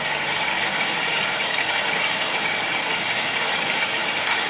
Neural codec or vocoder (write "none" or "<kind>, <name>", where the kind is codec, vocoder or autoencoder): codec, DAC